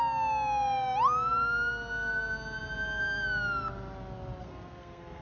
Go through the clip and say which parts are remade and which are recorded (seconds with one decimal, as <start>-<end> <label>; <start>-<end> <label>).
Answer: 0.0-4.4 recorded; 4.4-5.2 remade